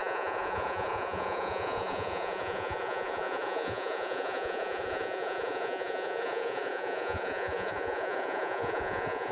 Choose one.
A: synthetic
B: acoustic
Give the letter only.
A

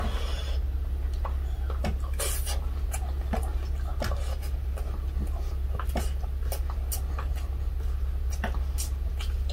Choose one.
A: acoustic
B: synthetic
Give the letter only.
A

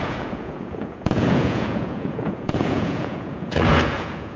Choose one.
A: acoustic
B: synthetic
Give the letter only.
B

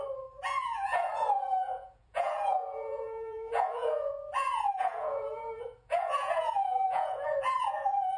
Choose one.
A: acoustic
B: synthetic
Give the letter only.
B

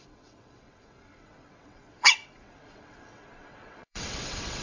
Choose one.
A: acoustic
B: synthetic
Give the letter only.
B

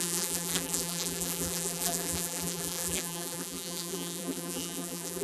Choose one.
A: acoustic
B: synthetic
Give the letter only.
B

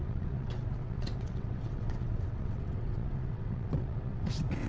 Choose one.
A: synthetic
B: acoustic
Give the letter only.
A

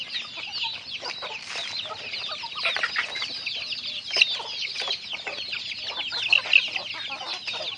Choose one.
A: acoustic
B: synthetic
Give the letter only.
A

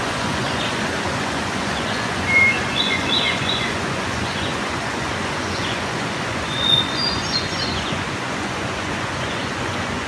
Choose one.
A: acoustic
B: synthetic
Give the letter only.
B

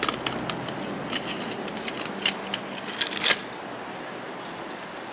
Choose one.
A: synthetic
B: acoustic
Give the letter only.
B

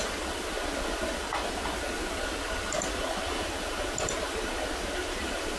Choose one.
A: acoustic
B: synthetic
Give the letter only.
A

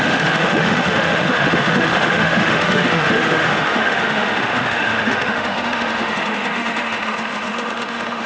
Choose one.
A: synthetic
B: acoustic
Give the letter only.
A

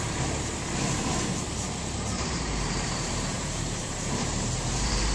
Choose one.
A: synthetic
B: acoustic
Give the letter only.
A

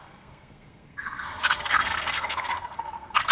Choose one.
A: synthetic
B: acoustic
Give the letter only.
A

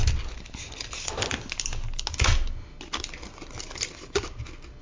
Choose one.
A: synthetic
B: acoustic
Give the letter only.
B